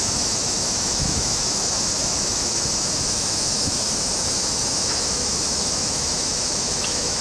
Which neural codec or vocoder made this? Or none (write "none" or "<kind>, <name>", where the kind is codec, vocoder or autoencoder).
autoencoder, DAC-VAE